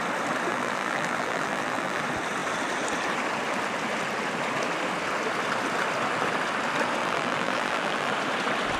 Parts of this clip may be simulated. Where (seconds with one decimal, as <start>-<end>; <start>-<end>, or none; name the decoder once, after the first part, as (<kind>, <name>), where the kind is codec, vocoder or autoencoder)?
0.5-2.0 (vocoder, BigVGAN v2); 7.0-8.1

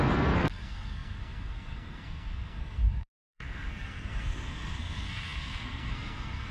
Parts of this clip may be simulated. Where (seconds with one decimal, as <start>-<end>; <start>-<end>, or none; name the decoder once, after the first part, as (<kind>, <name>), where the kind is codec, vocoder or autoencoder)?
0.0-6.5 (codec, SNAC)

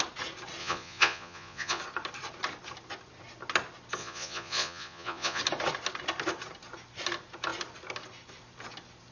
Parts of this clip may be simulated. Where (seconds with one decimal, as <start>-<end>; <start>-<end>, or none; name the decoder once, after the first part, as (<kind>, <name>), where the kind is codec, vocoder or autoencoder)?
0.6-1.8 (vocoder, Vocos); 4.0-5.4

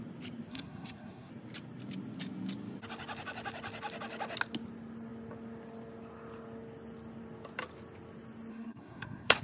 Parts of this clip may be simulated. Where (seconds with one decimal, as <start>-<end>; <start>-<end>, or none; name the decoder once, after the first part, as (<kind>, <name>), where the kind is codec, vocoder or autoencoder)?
0.5-1.3 (codec, SNAC); 8.5-9.4

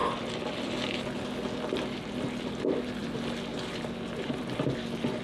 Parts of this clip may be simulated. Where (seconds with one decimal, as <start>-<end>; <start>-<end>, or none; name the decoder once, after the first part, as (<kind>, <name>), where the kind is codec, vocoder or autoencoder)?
none